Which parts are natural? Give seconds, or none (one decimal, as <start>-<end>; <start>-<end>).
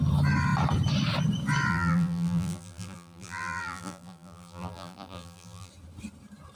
0.0-1.7; 5.7-6.6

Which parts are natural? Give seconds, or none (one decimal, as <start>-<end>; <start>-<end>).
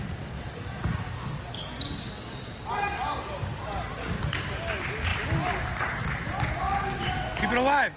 0.0-8.0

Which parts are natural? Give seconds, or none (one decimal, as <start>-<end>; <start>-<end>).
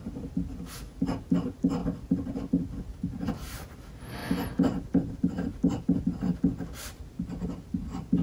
0.0-1.8; 2.5-5.5; 6.0-8.2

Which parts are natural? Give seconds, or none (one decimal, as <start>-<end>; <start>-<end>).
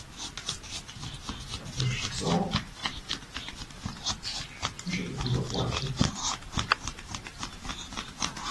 0.0-5.0; 7.5-8.5